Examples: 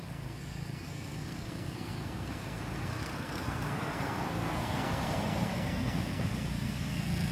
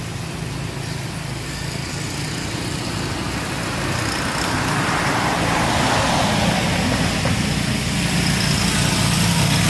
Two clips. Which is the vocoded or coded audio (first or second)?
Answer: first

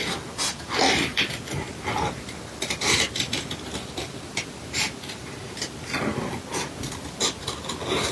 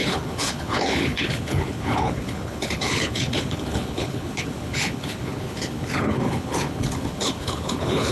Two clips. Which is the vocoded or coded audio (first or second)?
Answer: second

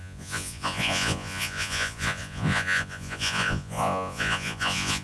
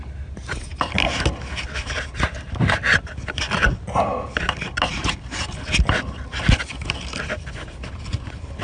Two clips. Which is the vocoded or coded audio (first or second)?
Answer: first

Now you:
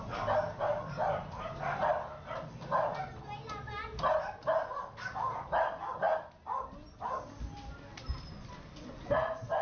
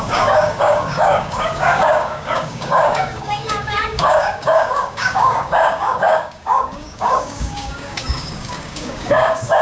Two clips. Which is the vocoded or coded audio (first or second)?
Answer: second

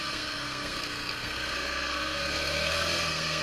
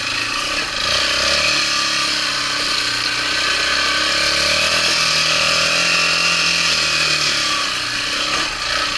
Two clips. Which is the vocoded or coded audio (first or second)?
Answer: first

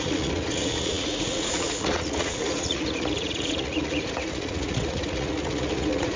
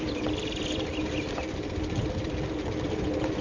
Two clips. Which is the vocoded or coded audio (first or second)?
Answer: first